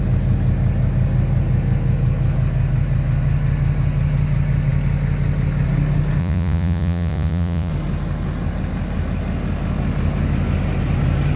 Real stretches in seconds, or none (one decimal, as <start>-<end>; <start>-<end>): 0.0-6.2; 7.7-11.4